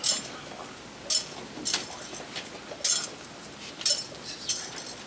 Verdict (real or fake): real